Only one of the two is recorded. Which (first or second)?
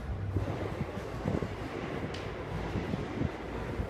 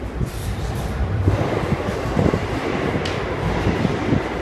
first